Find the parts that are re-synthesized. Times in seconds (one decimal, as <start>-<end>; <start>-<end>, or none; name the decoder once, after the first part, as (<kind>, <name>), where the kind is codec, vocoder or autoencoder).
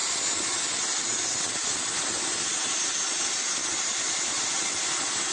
none